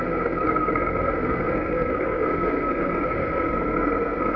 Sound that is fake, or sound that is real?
fake